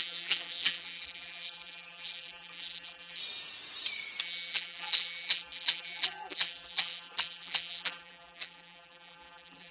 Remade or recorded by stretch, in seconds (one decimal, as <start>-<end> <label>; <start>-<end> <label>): 0.0-3.2 remade; 3.2-4.2 recorded; 4.2-9.7 remade